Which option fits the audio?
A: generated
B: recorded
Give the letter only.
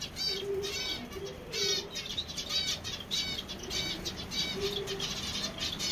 B